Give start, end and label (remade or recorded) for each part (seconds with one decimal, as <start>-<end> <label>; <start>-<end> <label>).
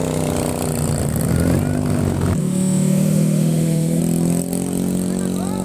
0.0-2.4 recorded; 2.4-4.0 remade; 4.0-5.6 recorded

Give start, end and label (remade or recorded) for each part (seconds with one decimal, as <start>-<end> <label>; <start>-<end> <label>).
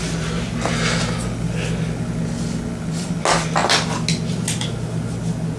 0.0-5.6 recorded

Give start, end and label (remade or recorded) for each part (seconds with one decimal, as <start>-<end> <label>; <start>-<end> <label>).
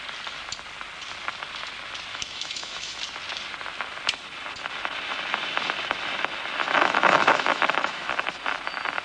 0.0-2.1 recorded; 2.1-3.0 remade; 3.0-6.6 recorded; 6.6-8.1 remade; 8.1-9.0 recorded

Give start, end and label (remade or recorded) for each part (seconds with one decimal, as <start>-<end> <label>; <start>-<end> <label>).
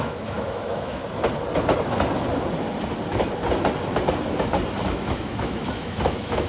0.0-1.0 remade; 1.0-4.9 recorded; 4.9-6.5 remade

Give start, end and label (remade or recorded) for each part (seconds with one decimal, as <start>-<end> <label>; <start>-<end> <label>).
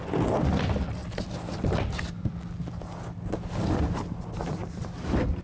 0.0-5.4 recorded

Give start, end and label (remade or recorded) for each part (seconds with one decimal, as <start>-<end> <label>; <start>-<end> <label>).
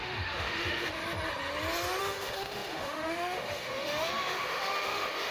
0.0-1.0 remade; 1.0-2.0 recorded; 2.0-5.3 remade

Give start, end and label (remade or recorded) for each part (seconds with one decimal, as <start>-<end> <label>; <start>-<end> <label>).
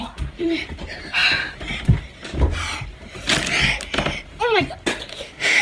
0.0-5.1 recorded; 5.1-5.6 remade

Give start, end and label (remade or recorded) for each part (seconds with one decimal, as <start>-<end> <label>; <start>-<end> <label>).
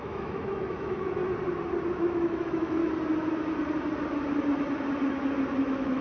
0.0-1.2 remade; 1.2-1.9 recorded; 1.9-2.8 remade; 2.8-5.6 recorded; 5.6-6.0 remade